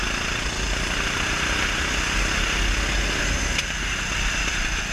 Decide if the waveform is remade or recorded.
recorded